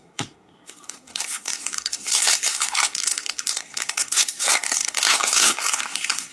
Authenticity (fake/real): fake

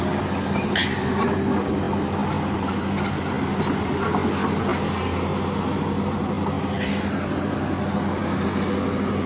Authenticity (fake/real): real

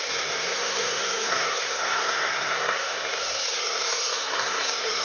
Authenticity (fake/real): fake